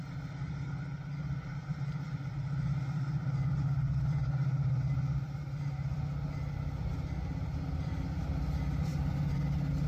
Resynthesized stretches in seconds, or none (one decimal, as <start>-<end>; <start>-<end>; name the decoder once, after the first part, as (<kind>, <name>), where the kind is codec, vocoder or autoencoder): 1.1-6.0 (vocoder, BigVGAN v2); 8.9-9.4